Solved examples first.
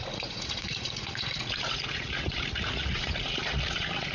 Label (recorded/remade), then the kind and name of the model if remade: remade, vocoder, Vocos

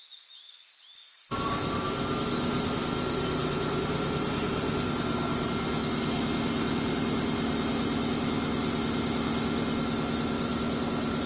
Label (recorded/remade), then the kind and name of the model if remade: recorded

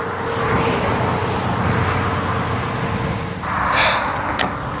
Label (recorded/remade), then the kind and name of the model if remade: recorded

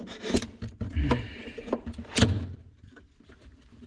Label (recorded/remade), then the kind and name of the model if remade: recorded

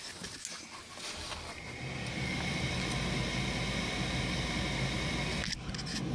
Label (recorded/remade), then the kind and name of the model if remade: recorded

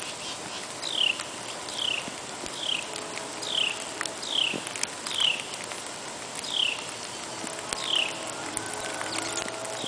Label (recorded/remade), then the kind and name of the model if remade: recorded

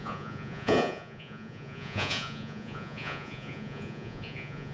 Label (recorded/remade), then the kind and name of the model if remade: remade, vocoder, Vocos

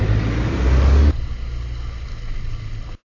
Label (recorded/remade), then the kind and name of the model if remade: recorded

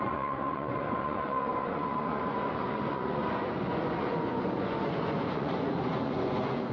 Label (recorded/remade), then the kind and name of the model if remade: remade, vocoder, Vocos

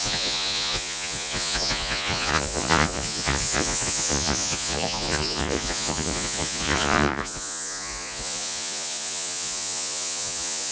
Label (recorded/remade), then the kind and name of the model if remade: remade, vocoder, Vocos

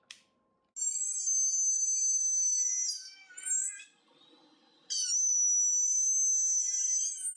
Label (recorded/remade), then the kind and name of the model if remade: recorded